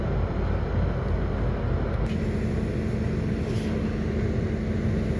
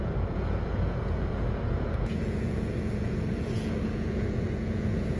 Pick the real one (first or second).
first